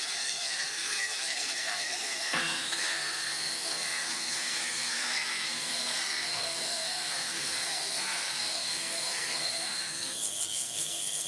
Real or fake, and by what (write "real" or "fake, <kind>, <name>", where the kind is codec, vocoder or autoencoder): fake, codec, SNAC